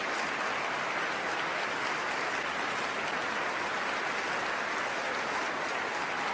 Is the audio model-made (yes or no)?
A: no